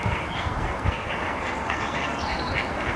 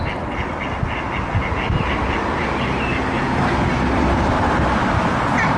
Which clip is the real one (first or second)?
second